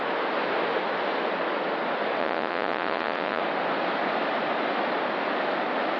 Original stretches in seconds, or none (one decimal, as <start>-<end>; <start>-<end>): 0.0-2.2; 3.4-6.0